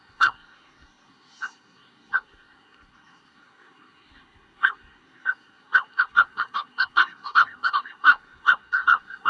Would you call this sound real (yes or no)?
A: no